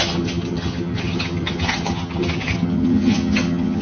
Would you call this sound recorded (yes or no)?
no